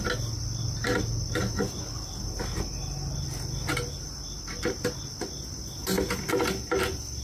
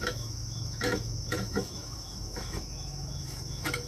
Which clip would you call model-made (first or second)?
second